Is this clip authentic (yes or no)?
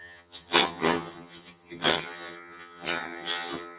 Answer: no